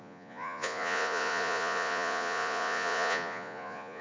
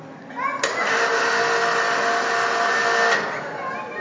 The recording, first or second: second